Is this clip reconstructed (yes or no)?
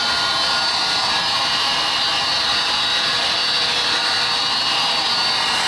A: no